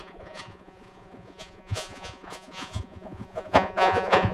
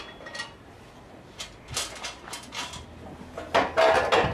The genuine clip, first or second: second